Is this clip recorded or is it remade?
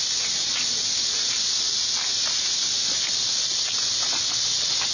recorded